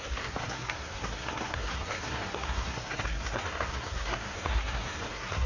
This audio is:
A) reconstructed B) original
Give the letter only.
A